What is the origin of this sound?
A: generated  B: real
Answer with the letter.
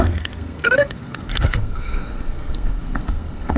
A